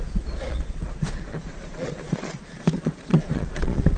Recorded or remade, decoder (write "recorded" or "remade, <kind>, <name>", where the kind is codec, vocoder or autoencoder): remade, vocoder, Vocos